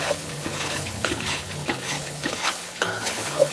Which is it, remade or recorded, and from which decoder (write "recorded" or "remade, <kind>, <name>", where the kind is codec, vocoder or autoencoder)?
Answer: remade, codec, HILCodec